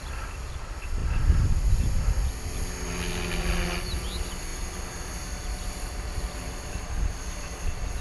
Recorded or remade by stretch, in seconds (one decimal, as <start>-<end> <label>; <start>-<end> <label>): 0.0-8.0 recorded